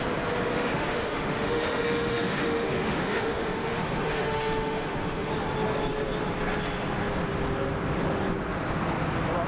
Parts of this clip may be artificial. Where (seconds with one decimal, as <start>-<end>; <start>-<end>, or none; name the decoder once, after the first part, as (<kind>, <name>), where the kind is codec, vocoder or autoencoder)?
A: 0.5-5.3 (autoencoder, DAC-VAE)